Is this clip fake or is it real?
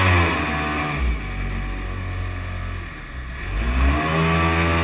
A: real